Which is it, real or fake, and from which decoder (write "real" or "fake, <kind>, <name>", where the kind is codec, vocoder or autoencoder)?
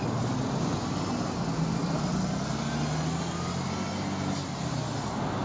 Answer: real